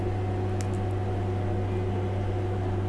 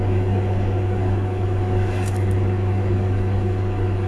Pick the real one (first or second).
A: first